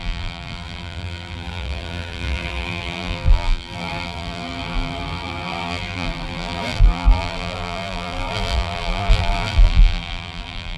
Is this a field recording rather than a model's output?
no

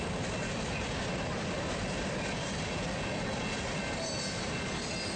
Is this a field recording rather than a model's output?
yes